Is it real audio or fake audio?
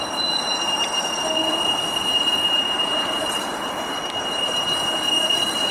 real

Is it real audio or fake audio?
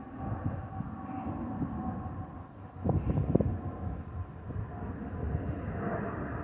real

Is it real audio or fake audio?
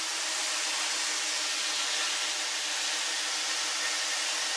real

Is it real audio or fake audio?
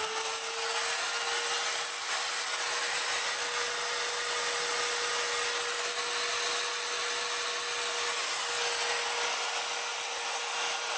real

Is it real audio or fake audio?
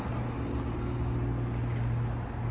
real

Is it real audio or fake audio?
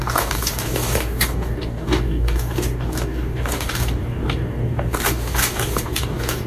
fake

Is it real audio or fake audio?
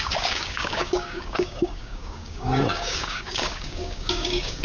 fake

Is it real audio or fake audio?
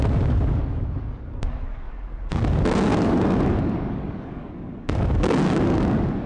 fake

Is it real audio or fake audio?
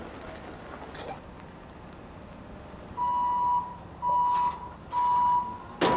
real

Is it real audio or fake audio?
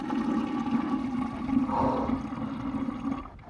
real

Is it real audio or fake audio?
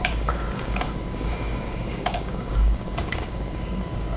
fake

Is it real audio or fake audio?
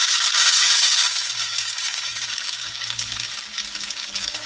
fake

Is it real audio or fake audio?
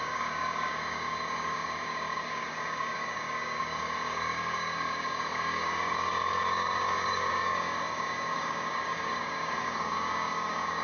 fake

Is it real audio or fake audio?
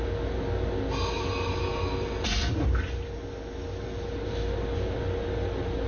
real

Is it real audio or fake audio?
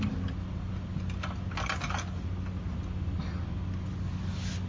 real